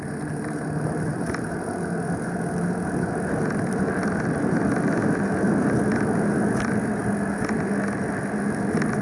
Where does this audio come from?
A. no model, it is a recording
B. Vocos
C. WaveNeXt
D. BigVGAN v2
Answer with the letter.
A